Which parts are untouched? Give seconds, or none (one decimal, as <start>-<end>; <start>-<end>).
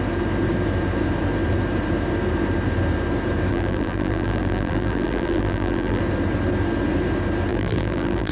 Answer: 0.0-3.5; 6.0-7.5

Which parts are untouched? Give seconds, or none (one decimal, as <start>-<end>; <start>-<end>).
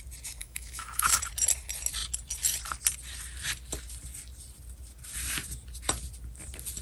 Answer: 0.0-0.4; 1.2-6.8